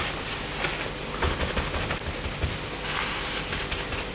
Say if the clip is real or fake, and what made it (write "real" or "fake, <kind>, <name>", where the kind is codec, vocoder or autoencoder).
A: real